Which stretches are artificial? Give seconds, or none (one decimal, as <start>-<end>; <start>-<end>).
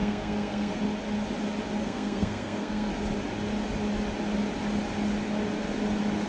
0.0-0.8; 1.8-2.9